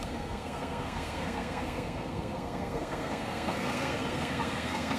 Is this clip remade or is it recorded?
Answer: remade